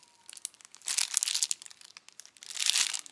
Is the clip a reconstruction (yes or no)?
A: no